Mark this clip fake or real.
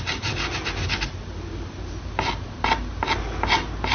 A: real